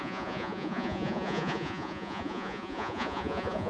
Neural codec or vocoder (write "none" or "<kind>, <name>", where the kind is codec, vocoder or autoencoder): vocoder, Vocos